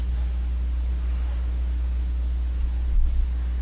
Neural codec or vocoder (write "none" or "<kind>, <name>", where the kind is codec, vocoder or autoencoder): none